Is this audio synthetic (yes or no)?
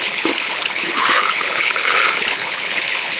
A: yes